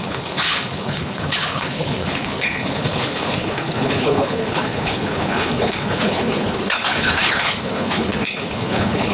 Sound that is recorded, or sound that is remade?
remade